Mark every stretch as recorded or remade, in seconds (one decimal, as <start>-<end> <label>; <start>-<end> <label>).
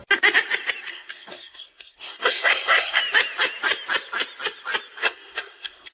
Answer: 0.0-0.9 recorded; 0.9-3.0 remade; 3.0-5.0 recorded; 5.0-5.9 remade